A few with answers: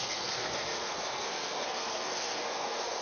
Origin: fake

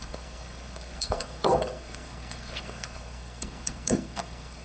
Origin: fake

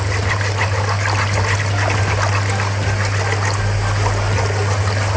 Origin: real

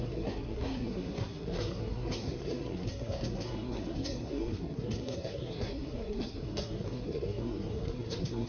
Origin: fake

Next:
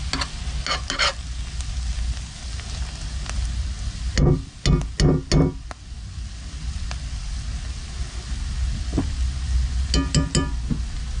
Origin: real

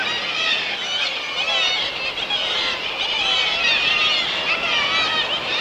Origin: real